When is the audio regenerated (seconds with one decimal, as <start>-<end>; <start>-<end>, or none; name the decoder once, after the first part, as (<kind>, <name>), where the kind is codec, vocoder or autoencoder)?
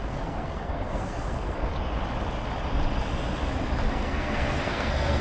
0.0-1.7 (codec, SNAC); 3.9-5.2